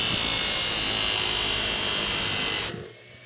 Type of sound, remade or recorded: recorded